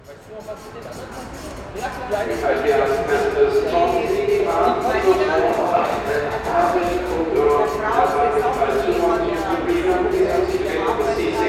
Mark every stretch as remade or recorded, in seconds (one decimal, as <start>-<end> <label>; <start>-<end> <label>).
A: 0.0-5.5 recorded; 5.5-7.3 remade; 7.3-11.5 recorded